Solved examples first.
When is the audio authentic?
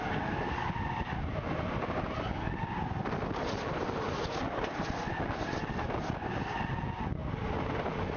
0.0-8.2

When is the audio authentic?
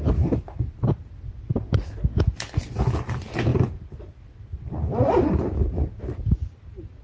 0.0-7.0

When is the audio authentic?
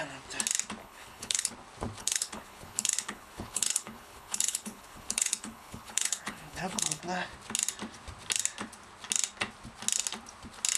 0.0-0.8; 1.5-2.0; 7.0-10.8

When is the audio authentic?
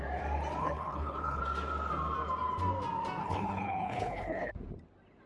0.0-0.6; 1.4-3.2; 4.5-5.3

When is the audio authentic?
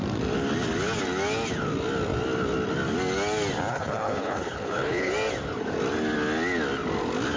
0.0-3.7; 5.1-7.4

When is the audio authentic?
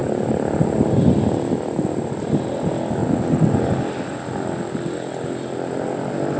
0.0-6.4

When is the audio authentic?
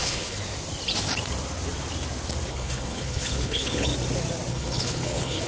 0.4-2.5; 3.9-4.5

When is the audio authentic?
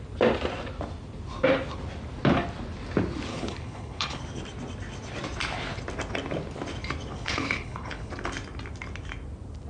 0.0-3.3; 4.2-7.1; 8.1-9.7